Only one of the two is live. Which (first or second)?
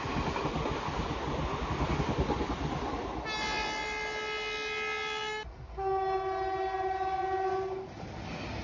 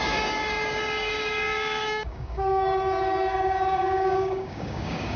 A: first